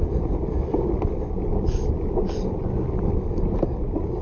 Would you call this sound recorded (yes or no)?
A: yes